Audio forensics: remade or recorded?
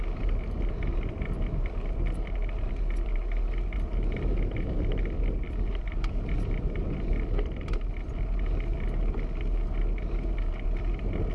recorded